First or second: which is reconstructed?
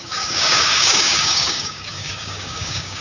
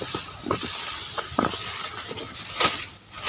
first